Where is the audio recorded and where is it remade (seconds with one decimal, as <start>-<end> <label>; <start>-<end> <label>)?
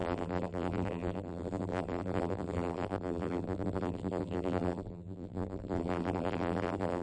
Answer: 0.0-7.0 remade